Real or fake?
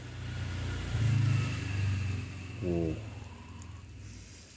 real